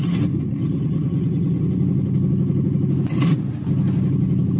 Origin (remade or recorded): recorded